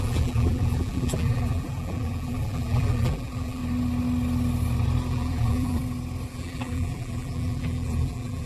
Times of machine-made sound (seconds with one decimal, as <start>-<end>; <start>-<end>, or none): 0.0-3.6; 5.1-5.8; 6.3-8.5